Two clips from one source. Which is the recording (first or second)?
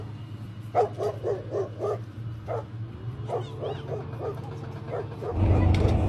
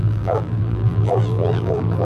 first